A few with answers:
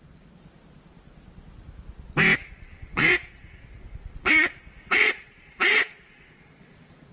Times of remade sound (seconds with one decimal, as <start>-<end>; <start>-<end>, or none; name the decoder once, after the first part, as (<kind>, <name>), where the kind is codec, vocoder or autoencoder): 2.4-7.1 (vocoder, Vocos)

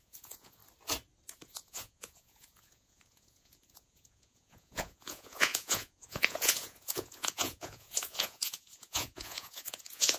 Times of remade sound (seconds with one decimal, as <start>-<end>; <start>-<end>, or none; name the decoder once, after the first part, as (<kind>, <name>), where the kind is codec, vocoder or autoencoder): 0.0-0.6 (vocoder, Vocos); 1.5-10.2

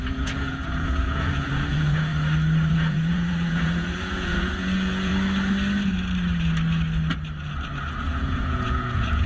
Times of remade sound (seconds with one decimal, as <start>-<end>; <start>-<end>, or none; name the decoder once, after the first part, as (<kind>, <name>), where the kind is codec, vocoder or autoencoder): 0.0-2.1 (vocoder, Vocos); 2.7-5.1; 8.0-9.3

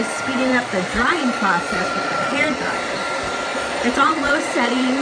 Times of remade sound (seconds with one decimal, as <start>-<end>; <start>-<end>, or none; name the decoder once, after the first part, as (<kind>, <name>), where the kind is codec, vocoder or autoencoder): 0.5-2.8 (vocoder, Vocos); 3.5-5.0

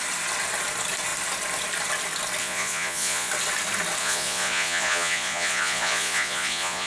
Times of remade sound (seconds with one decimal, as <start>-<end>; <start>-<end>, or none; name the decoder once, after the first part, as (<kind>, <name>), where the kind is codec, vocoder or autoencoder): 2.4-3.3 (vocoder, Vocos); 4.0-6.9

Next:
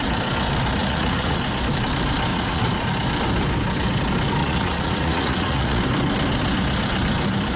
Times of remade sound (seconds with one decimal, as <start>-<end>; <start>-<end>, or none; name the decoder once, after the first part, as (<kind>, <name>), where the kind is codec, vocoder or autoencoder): 0.8-1.4 (vocoder, Vocos); 2.3-2.8; 4.4-5.8

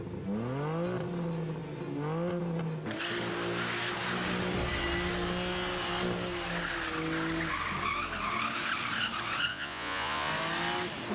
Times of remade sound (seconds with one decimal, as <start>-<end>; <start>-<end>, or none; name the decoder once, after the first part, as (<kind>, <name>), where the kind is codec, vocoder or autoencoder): 9.5-10.3 (vocoder, Vocos)

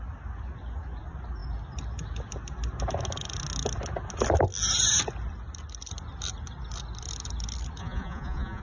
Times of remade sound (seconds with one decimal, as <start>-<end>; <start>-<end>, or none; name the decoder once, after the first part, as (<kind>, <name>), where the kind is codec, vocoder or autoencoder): 7.8-8.6 (vocoder, Vocos)